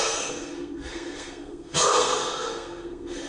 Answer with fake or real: fake